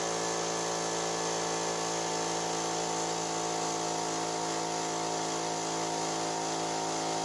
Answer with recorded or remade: recorded